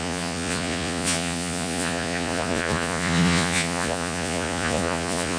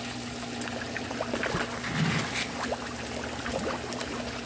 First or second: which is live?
second